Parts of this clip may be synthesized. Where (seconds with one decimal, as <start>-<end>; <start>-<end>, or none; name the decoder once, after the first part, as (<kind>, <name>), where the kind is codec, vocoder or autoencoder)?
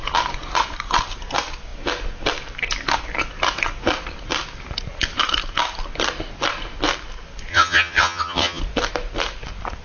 7.5-8.6 (vocoder, HiFi-GAN)